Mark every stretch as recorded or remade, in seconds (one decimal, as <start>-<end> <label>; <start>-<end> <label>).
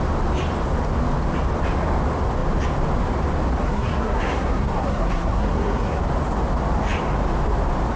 0.0-3.6 recorded; 3.6-6.0 remade; 6.0-8.0 recorded